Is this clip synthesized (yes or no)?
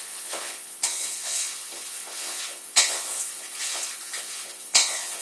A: yes